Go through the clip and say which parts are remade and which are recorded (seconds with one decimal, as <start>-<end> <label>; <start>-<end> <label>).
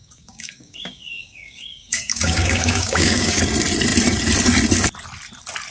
0.0-3.4 remade; 3.4-5.7 recorded